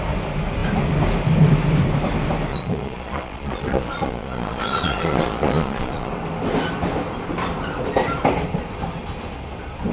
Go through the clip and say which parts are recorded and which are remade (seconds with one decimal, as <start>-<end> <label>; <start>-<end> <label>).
0.0-2.5 recorded; 2.5-6.1 remade; 6.1-9.9 recorded